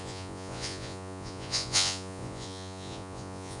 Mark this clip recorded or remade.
remade